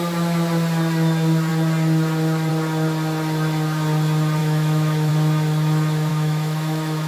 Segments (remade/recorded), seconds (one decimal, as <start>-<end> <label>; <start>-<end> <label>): 0.0-4.4 recorded; 4.4-5.1 remade; 5.1-6.1 recorded; 6.1-7.1 remade